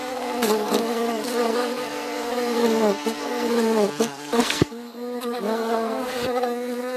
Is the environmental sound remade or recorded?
remade